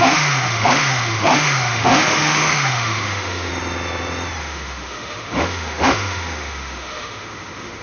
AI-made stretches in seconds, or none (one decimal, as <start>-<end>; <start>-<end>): 0.0-3.5; 4.4-7.8